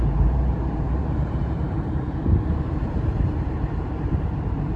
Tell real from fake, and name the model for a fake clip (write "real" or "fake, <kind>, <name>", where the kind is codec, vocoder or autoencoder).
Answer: fake, vocoder, BigVGAN v2